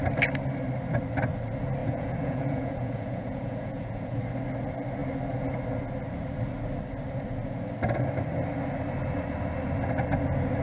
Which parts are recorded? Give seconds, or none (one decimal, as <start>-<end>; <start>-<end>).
0.0-1.8; 4.2-10.6